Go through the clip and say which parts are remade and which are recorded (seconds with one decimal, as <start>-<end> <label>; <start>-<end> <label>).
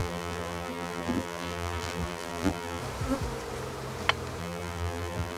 0.0-2.8 remade; 2.8-4.4 recorded; 4.4-5.4 remade